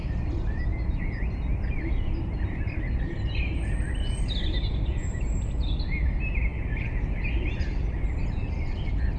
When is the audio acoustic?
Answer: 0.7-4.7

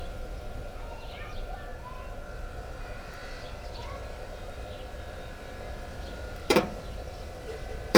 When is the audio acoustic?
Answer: 1.7-2.5

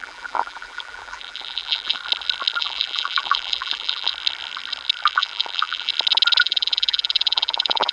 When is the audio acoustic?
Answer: 2.0-2.6; 4.1-5.1; 5.9-6.4

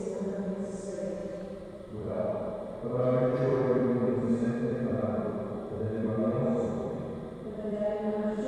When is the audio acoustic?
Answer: 0.0-1.2; 2.1-3.5; 7.9-8.5

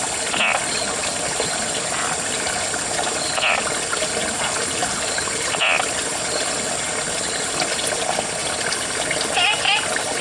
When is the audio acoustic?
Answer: 0.0-1.1; 1.7-4.8; 5.6-10.2

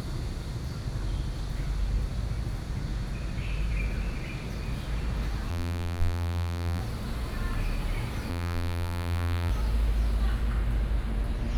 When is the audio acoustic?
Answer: 0.0-5.5; 6.8-8.3; 9.5-11.6